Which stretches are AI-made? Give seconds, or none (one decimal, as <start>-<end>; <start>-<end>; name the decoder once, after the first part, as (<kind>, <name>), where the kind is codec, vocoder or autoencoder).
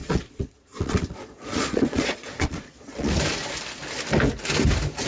0.0-3.1 (vocoder, Vocos)